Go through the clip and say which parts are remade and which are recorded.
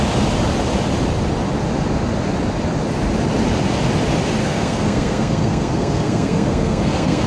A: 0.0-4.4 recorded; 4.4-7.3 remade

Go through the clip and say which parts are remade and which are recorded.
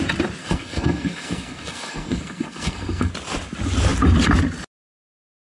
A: 0.0-0.4 recorded; 0.4-3.1 remade; 3.1-5.5 recorded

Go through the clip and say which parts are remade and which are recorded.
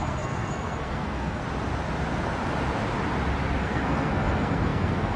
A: 0.0-1.4 remade; 1.4-3.6 recorded; 3.6-5.2 remade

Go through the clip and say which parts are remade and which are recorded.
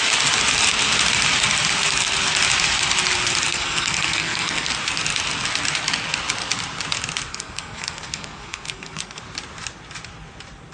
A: 0.0-3.5 recorded; 3.5-4.7 remade; 4.7-7.3 recorded; 7.3-9.2 remade; 9.2-10.7 recorded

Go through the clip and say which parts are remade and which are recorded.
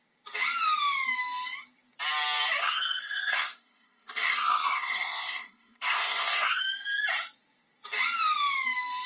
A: 0.0-2.6 recorded; 2.6-6.6 remade; 6.6-9.1 recorded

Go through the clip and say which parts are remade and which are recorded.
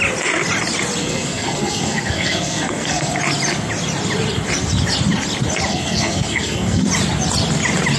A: 0.0-1.0 recorded; 1.0-3.2 remade; 3.2-5.7 recorded; 5.7-6.8 remade; 6.8-8.0 recorded